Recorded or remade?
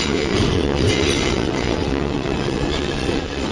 remade